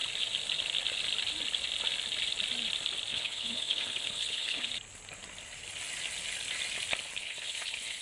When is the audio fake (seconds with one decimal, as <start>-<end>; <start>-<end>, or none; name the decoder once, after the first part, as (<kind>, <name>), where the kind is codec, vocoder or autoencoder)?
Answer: 3.1-4.7 (codec, HILCodec); 7.2-8.0